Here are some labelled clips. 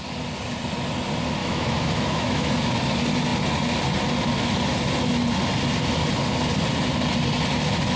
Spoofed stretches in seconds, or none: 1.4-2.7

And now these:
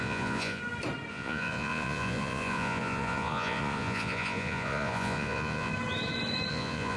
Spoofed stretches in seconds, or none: 0.0-0.6; 1.1-5.7; 6.5-7.0

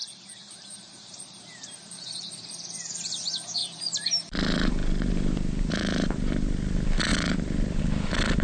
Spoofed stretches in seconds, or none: 0.0-2.3; 3.6-4.2

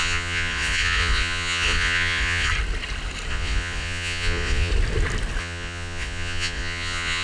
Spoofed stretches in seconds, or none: 0.0-2.5; 3.3-4.7; 5.4-7.2

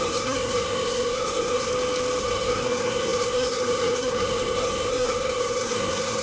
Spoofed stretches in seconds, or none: 0.0-1.7; 2.2-6.2

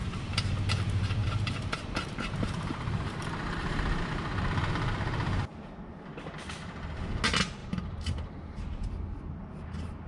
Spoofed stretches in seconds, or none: 0.0-0.7; 1.2-4.7; 7.6-9.2

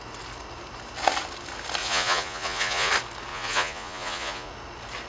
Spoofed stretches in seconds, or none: 1.8-2.9; 3.3-4.5